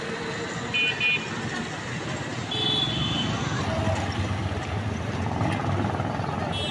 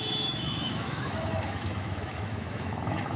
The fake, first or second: second